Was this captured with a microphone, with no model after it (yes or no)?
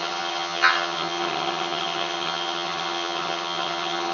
no